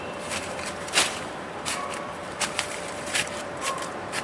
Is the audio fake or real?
fake